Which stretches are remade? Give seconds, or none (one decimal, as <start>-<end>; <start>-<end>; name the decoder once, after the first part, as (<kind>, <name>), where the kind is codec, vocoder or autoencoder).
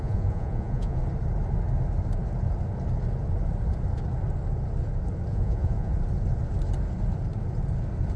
0.0-1.0 (vocoder, Vocos); 5.3-5.9